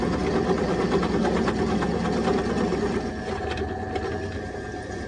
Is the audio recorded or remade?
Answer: recorded